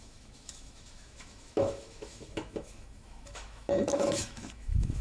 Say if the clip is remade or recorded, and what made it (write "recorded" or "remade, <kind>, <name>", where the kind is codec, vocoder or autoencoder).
remade, autoencoder, DAC-VAE